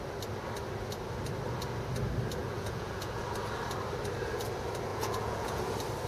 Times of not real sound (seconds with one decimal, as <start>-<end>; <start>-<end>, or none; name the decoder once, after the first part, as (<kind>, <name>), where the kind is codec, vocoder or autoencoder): 2.4-3.2 (vocoder, Vocos); 4.9-5.6